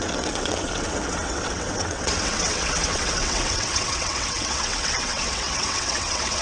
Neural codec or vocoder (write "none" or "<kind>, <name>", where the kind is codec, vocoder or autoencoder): vocoder, WaveNeXt